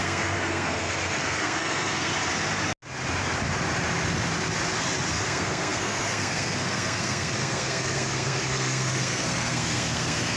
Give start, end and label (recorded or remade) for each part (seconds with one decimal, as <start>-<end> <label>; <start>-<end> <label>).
0.0-2.1 remade; 2.1-5.1 recorded; 5.1-10.4 remade